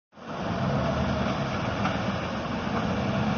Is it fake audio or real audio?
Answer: real